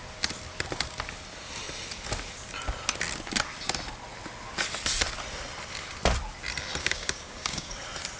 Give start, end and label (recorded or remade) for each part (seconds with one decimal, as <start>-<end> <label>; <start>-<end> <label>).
0.0-6.8 recorded; 6.8-7.7 remade; 7.7-8.2 recorded